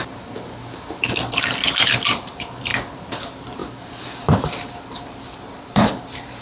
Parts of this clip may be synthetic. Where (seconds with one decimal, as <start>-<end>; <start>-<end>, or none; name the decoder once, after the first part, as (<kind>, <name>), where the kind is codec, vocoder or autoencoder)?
0.0-2.7 (vocoder, BigVGAN v2); 3.2-6.4